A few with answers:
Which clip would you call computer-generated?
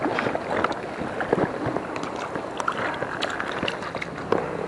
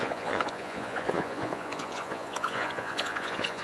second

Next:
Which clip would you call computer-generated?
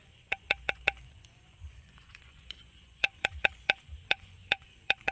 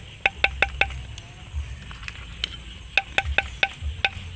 first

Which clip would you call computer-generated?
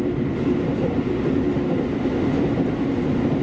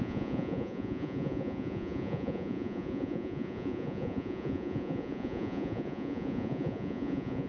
second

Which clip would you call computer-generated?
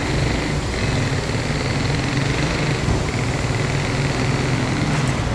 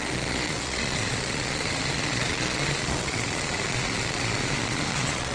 second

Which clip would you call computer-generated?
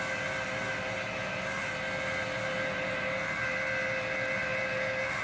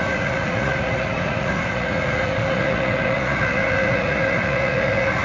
second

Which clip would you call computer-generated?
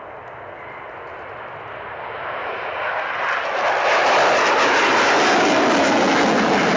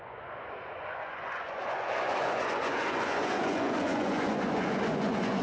second